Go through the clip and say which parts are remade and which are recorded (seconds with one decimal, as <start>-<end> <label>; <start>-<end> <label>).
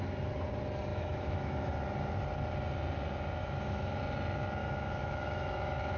0.0-0.9 recorded; 0.9-1.7 remade; 1.7-3.4 recorded; 3.4-4.0 remade; 4.0-4.6 recorded; 4.6-6.0 remade